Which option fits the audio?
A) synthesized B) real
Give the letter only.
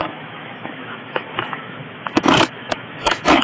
A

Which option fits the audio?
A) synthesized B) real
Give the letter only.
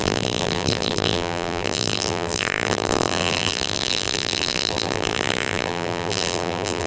A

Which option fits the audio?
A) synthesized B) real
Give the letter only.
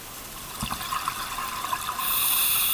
B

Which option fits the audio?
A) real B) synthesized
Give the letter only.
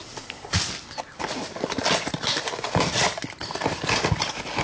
A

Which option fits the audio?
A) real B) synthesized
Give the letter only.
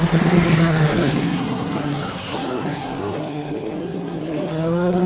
B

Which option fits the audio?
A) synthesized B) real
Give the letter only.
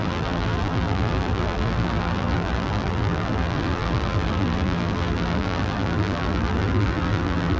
A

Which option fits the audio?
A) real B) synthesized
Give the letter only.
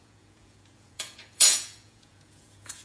B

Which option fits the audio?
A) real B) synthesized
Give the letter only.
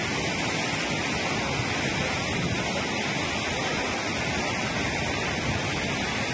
B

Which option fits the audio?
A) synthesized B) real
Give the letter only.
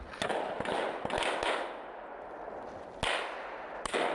B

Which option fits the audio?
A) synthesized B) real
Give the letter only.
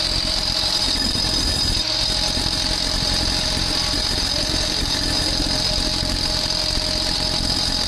B